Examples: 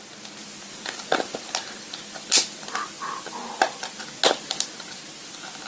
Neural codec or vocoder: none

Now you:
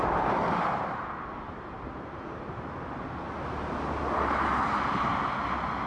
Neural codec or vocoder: none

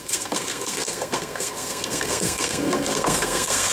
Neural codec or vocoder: codec, SNAC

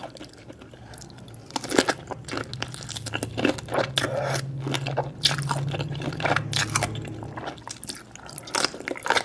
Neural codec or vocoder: none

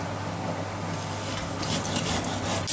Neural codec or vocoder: none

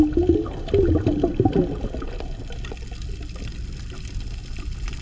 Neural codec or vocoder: none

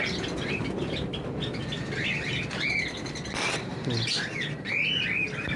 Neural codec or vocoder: vocoder, BigVGAN v2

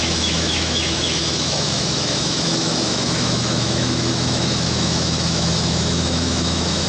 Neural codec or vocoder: autoencoder, DAC-VAE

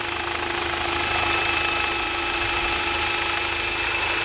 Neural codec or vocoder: none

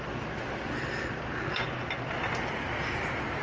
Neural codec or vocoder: none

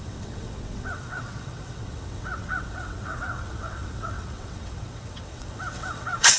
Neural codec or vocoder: vocoder, WaveNeXt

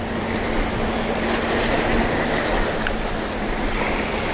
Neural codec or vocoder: none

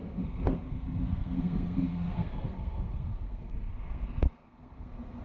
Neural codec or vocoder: codec, SNAC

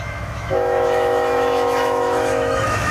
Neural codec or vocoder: autoencoder, DAC-VAE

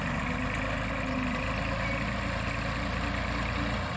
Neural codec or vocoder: none